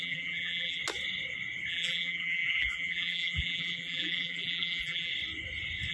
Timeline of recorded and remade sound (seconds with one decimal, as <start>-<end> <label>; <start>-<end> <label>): 0.0-0.8 remade; 0.8-1.7 recorded; 1.7-5.1 remade; 5.1-5.9 recorded